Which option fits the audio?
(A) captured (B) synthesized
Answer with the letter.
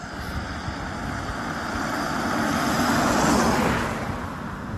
B